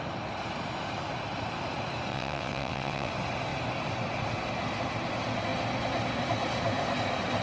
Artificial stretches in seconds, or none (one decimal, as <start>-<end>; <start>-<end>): 2.1-3.1